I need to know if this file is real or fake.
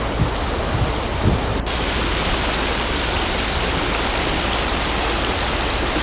real